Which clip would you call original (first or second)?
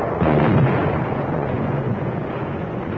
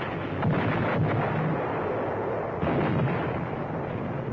second